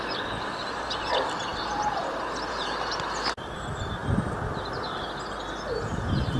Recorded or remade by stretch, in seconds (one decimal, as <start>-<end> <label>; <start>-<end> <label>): 0.0-6.4 recorded